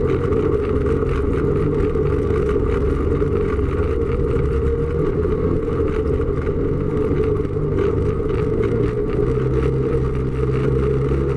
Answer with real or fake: real